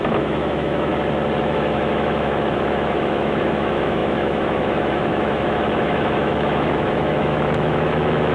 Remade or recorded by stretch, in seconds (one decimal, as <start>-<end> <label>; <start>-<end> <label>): 0.0-0.9 remade; 0.9-1.4 recorded; 1.4-8.3 remade